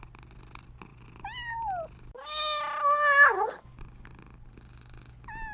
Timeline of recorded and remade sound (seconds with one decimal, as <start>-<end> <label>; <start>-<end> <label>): 0.0-5.5 recorded